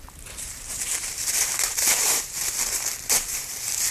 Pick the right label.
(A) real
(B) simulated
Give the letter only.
B